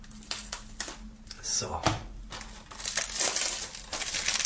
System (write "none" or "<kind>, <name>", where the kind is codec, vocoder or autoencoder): none